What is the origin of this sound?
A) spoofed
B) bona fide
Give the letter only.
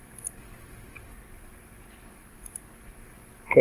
A